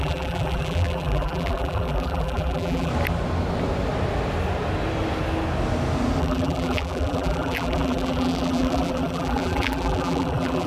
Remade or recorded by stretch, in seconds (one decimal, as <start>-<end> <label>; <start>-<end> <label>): 0.0-2.9 remade; 2.9-6.2 recorded; 6.2-10.7 remade